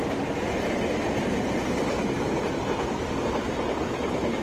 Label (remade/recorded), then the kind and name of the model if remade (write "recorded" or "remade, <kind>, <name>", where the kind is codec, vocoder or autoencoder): recorded